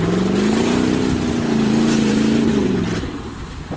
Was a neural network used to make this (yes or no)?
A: no